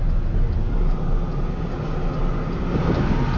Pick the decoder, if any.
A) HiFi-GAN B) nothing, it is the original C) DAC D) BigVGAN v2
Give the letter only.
B